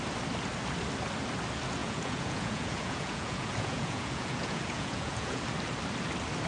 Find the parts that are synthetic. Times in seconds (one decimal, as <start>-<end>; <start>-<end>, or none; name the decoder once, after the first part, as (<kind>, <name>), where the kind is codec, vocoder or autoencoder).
1.8-5.4 (vocoder, Vocos)